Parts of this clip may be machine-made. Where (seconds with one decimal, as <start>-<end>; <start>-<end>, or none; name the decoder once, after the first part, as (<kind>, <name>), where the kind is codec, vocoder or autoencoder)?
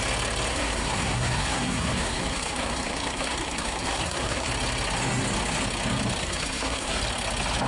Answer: 0.5-4.5 (codec, SNAC); 6.2-7.0